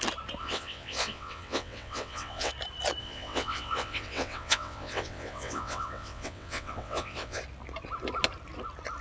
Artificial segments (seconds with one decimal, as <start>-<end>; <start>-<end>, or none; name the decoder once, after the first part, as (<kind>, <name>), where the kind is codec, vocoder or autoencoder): 0.4-2.5 (vocoder, WaveNeXt); 3.0-7.4